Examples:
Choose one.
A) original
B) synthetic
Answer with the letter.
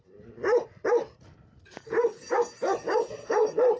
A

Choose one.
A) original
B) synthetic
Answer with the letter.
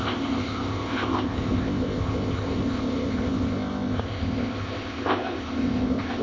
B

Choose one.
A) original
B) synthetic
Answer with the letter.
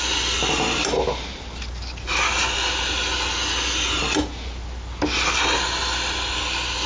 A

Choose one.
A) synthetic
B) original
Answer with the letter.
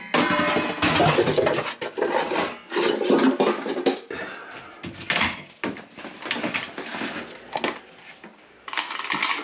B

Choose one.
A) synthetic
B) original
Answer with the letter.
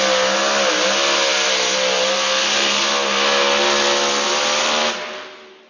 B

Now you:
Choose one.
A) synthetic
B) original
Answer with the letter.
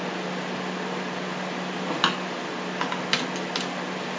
B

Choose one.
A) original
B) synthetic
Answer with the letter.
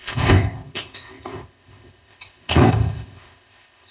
B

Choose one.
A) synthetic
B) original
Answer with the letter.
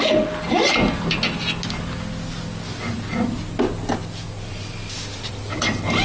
B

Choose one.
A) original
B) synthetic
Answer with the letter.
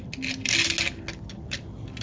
A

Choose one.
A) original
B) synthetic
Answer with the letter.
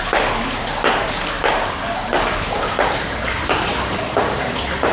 A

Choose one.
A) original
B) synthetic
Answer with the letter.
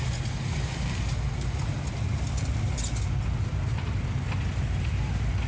A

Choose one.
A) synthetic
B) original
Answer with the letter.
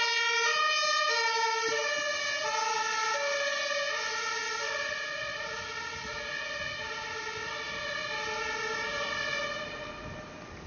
B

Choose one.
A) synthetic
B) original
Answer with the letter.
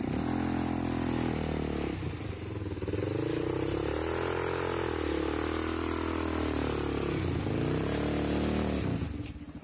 B